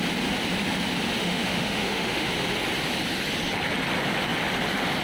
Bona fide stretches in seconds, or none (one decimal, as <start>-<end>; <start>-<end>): 0.0-1.2; 2.3-5.0